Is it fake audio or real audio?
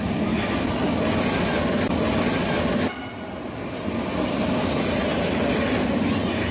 real